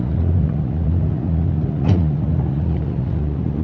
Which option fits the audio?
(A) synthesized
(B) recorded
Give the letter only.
A